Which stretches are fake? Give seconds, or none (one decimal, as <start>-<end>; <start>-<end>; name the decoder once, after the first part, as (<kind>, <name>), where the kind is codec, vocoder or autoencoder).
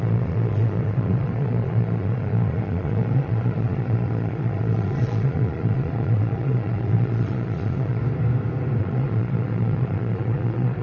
0.0-8.0 (vocoder, Vocos); 8.8-10.8